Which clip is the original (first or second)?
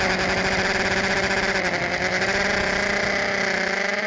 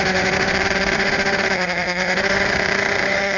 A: first